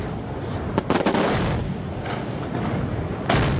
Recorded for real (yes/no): yes